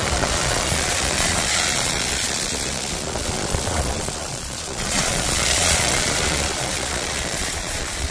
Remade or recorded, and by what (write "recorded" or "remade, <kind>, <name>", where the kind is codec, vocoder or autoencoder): remade, vocoder, Vocos